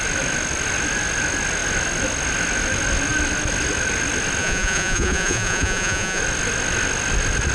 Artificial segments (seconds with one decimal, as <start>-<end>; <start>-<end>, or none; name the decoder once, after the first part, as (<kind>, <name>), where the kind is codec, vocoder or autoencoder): 4.4-6.2 (vocoder, Vocos)

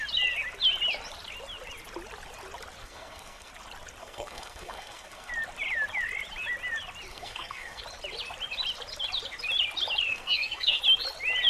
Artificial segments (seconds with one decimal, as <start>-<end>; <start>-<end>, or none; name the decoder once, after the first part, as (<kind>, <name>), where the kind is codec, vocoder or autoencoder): 2.8-3.5 (codec, SNAC); 4.0-5.3; 7.1-7.8; 10.1-10.8